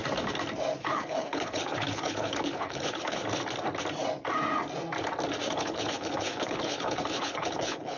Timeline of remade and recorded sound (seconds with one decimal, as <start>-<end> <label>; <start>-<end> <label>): 0.0-0.9 recorded; 0.9-3.2 remade; 3.2-5.5 recorded; 5.5-8.0 remade